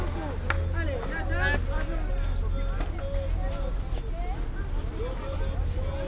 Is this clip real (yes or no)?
yes